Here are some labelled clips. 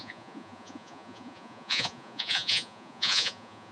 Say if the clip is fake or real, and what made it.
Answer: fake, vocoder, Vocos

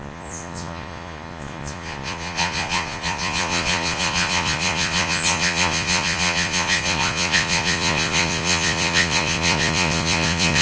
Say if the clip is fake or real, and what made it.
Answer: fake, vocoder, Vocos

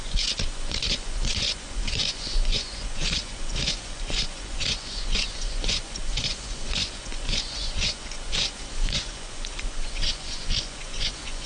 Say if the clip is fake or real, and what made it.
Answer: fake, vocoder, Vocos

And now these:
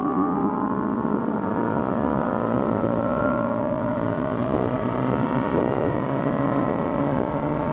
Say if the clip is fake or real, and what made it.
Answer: fake, vocoder, Vocos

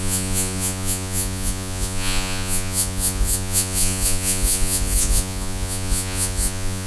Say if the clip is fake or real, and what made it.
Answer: fake, vocoder, Vocos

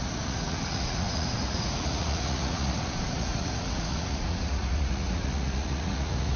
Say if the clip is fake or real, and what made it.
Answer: fake, vocoder, Vocos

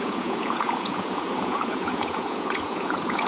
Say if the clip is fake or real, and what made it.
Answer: fake, vocoder, Vocos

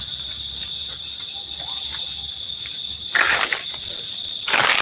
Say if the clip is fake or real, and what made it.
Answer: real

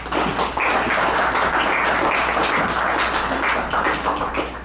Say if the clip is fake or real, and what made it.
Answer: real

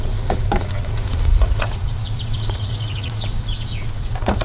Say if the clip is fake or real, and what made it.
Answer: fake, vocoder, Vocos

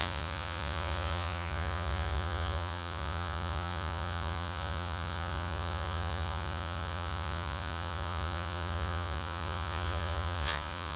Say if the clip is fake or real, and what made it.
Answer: fake, vocoder, Vocos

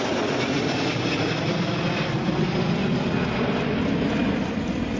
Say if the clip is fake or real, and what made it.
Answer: real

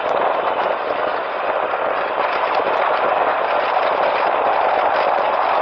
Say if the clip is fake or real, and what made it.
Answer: real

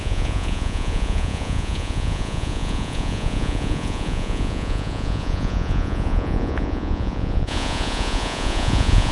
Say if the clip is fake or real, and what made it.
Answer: fake, vocoder, Vocos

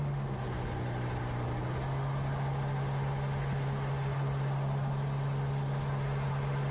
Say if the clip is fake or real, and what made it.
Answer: real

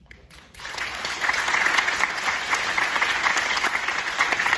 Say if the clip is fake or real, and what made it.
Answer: fake, vocoder, Vocos